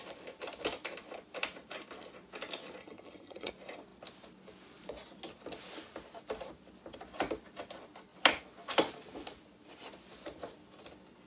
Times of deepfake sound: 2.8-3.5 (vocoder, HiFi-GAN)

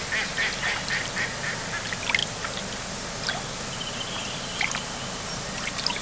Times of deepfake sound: none

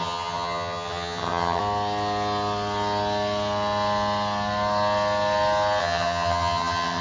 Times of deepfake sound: 0.0-1.6 (vocoder, HiFi-GAN); 5.8-7.0

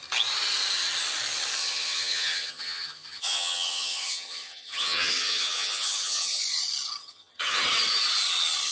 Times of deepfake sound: 1.6-6.4 (vocoder, HiFi-GAN); 7.0-7.6

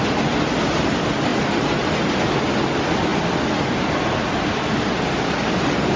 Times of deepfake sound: none

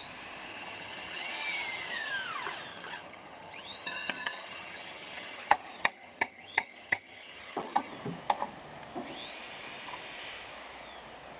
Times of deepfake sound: 0.5-2.1 (vocoder, HiFi-GAN); 2.7-7.9

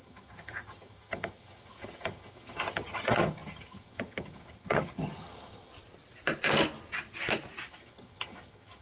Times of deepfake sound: 0.0-5.7 (vocoder, HiFi-GAN); 7.8-8.8